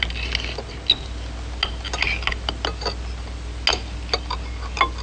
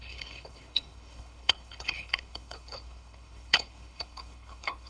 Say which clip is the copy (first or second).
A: second